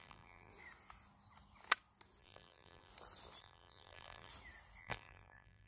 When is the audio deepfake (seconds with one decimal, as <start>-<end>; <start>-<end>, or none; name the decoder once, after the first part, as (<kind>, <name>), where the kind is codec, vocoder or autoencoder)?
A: 0.0-0.5 (vocoder, BigVGAN v2); 2.2-2.9; 3.4-4.3; 4.8-5.7